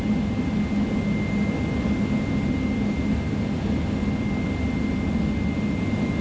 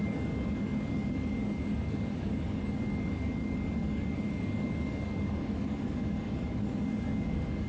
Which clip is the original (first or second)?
first